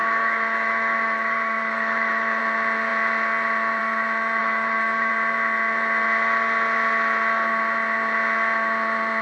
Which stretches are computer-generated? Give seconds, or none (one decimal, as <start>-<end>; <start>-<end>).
0.0-2.4; 4.4-5.1